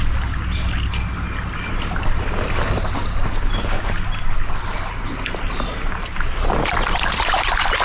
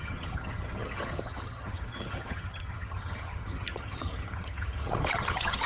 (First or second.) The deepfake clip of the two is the second